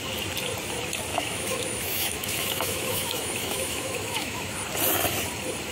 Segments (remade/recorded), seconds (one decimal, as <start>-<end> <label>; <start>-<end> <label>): 0.0-1.1 recorded; 1.1-4.5 remade; 4.5-5.7 recorded